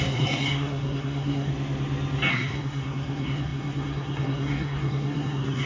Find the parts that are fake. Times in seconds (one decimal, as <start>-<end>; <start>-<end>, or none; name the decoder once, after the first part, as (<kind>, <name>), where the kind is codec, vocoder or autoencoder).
0.0-1.5 (codec, SNAC); 2.3-5.7